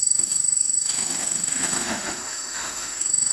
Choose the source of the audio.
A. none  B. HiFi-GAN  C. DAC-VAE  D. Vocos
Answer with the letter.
C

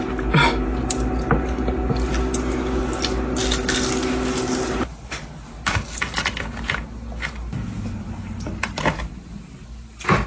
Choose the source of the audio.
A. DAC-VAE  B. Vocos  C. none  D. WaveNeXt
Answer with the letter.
C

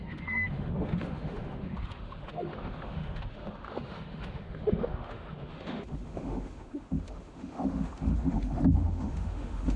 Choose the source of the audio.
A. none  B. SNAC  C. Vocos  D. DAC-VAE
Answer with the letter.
D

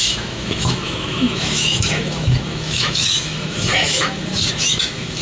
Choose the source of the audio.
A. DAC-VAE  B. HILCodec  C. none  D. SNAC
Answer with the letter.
A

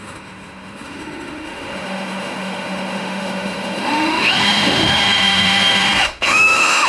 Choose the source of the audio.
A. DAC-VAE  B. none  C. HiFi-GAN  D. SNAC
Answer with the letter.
A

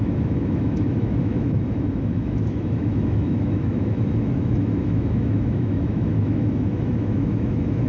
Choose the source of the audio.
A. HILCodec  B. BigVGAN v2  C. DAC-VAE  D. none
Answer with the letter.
C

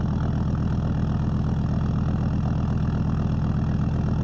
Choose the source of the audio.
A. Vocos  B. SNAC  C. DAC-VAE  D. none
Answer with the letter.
D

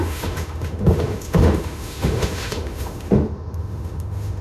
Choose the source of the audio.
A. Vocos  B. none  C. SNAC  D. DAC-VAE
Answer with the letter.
D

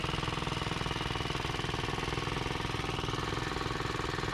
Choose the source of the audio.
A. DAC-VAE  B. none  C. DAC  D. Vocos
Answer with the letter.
B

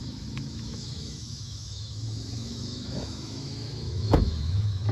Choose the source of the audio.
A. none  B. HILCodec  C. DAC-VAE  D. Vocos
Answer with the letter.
C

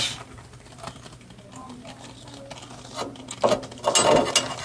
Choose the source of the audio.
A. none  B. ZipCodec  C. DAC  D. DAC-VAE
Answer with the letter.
A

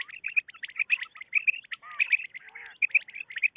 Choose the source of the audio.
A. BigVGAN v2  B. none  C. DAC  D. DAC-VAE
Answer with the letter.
B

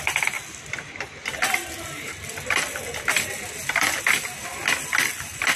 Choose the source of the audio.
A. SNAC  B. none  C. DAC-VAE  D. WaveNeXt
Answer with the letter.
B